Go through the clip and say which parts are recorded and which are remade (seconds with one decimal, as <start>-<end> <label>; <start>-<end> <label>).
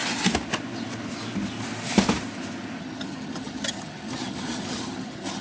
0.0-2.8 recorded; 2.8-5.4 remade